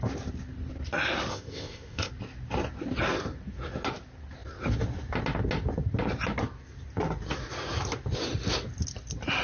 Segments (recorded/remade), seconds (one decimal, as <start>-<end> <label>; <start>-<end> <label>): 0.0-1.3 recorded; 1.3-2.1 remade; 2.1-9.4 recorded